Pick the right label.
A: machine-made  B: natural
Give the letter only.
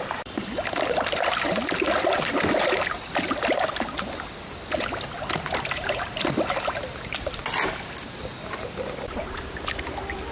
B